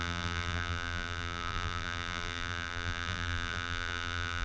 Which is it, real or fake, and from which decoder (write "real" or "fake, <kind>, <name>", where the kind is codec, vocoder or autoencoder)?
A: fake, vocoder, BigVGAN v2